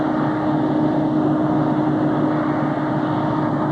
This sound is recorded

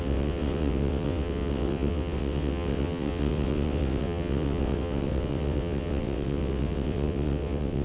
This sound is remade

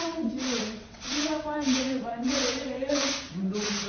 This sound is remade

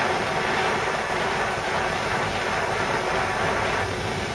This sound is recorded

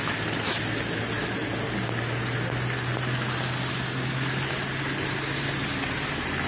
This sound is recorded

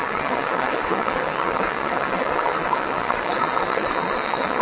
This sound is remade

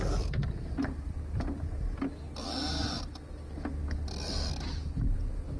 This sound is recorded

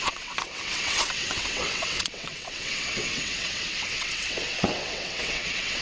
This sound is remade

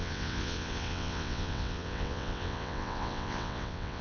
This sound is remade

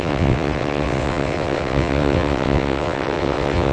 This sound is remade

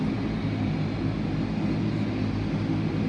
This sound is recorded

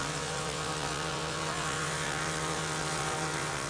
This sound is remade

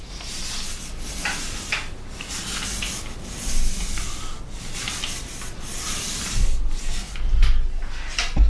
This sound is recorded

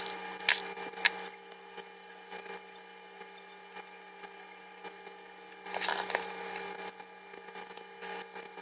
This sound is recorded